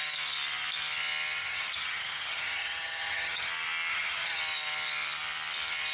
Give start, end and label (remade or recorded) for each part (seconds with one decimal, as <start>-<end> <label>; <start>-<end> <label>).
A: 0.0-1.4 recorded; 1.4-3.5 remade; 3.5-3.9 recorded; 3.9-4.4 remade; 4.4-5.9 recorded